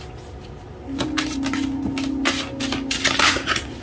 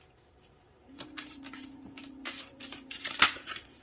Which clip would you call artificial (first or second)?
second